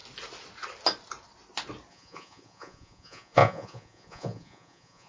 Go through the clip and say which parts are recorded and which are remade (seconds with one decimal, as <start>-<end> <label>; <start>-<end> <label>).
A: 0.0-1.9 recorded; 1.9-5.1 remade